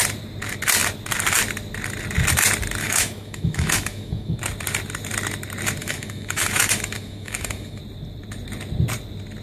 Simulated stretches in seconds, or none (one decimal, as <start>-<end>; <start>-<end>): 2.8-4.4; 5.8-7.8